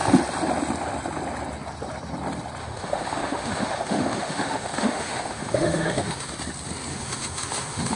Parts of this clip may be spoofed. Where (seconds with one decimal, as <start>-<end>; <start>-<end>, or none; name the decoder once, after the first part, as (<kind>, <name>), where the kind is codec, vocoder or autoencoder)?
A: 2.6-6.3 (autoencoder, DAC-VAE); 6.9-8.0